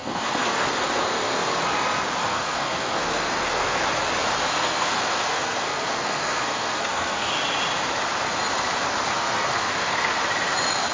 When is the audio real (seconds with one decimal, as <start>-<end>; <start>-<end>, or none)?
1.6-2.2; 3.8-4.4; 7.3-9.1; 10.2-10.9